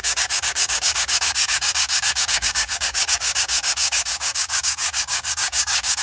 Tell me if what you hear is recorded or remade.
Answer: remade